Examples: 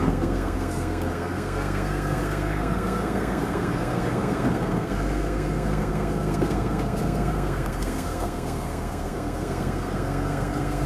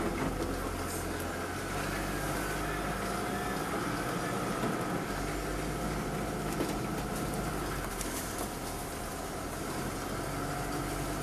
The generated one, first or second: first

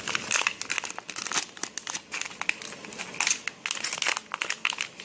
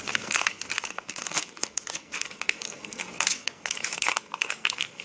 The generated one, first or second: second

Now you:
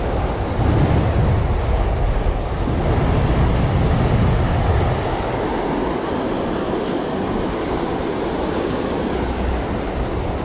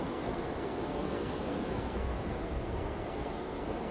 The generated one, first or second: second